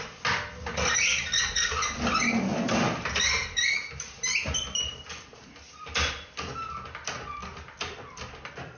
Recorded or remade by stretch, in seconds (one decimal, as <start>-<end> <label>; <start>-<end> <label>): 0.0-3.4 recorded; 3.4-6.3 remade; 6.3-8.8 recorded